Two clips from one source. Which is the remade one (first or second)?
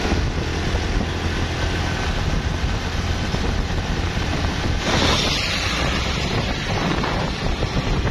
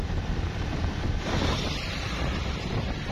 second